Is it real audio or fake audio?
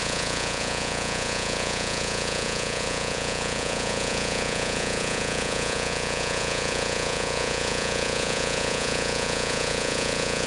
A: fake